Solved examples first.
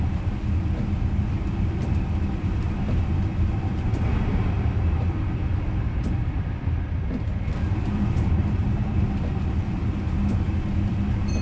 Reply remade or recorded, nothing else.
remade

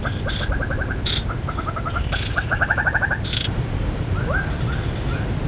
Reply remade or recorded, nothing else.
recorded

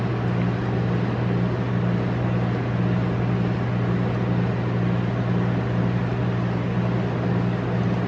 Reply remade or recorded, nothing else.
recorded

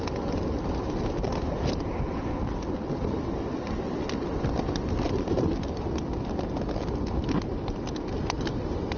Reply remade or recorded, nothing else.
recorded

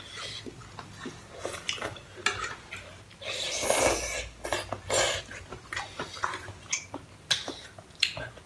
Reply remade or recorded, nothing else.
recorded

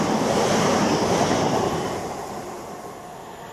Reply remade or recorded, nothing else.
recorded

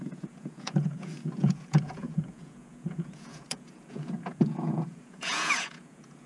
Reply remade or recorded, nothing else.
remade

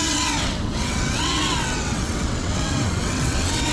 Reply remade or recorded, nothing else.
remade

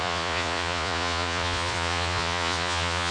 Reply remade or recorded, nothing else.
remade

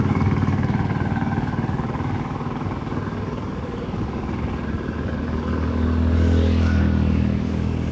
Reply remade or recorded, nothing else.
remade